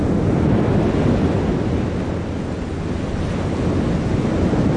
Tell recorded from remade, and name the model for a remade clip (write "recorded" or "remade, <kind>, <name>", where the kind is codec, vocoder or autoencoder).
recorded